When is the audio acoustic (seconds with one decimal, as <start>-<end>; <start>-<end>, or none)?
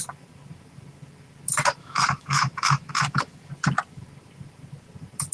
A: 0.0-1.8; 3.5-5.3